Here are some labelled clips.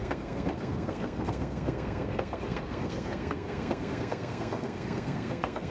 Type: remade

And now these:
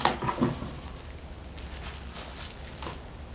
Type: recorded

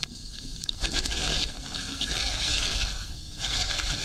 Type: remade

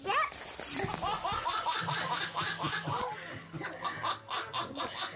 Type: recorded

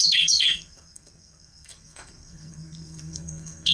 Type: remade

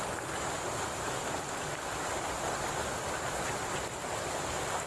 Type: recorded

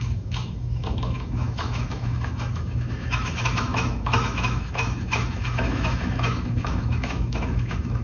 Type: remade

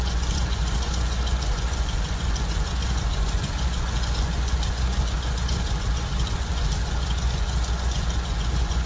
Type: remade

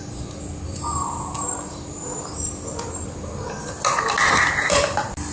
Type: recorded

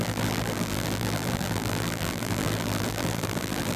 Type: remade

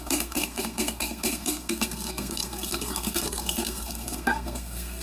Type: remade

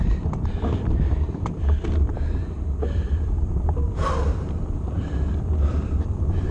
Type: remade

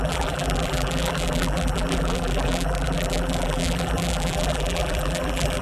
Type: remade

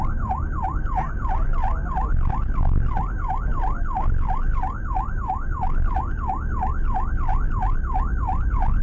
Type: recorded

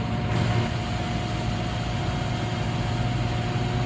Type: recorded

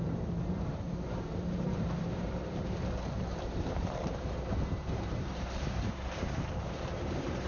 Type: remade